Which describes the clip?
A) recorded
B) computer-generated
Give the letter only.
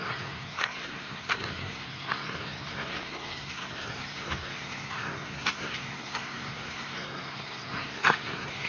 B